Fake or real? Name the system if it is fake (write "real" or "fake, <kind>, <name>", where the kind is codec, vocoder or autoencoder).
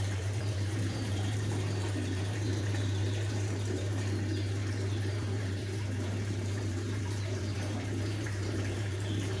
fake, vocoder, BigVGAN v2